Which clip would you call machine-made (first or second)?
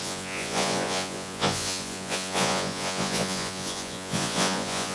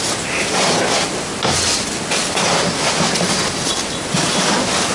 first